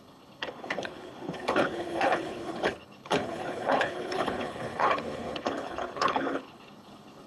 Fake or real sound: fake